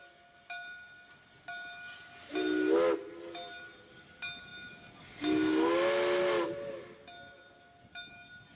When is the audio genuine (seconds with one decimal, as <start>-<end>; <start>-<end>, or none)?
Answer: 0.0-8.6